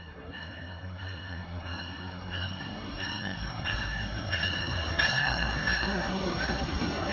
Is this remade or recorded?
remade